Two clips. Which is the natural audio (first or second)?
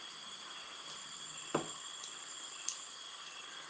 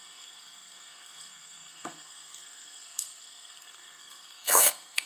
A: first